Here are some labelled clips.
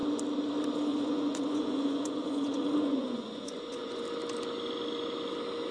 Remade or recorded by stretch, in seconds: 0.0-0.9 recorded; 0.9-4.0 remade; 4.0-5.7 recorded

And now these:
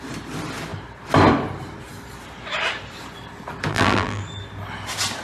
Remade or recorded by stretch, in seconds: 0.0-3.7 recorded; 3.7-4.2 remade; 4.2-5.2 recorded

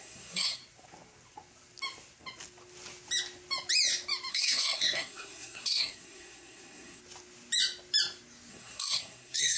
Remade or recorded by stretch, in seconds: 0.0-0.6 remade; 0.6-4.3 recorded; 4.3-7.0 remade; 7.0-8.5 recorded; 8.5-9.6 remade

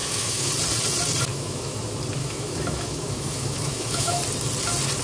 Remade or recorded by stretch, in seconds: 0.0-0.5 remade; 0.5-1.3 recorded; 1.3-1.8 remade; 1.8-2.2 recorded; 2.2-4.2 remade; 4.2-5.0 recorded

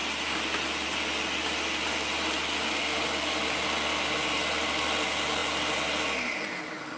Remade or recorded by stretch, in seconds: 0.0-7.0 recorded